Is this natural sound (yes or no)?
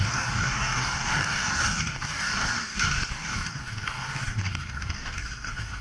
no